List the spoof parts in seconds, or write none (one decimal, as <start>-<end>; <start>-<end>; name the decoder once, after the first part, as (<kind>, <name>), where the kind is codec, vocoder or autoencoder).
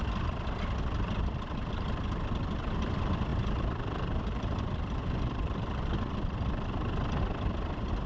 3.3-7.2 (vocoder, BigVGAN v2)